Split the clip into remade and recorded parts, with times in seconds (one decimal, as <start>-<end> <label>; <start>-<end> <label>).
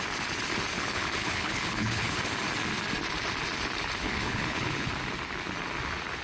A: 0.0-0.7 recorded; 0.7-2.2 remade; 2.2-4.0 recorded; 4.0-4.9 remade; 4.9-6.2 recorded